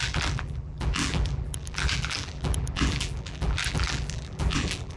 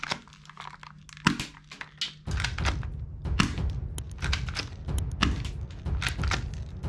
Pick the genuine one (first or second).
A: second